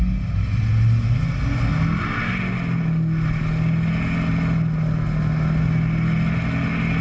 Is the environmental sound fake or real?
real